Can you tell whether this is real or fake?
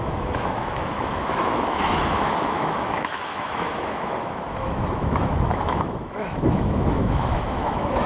fake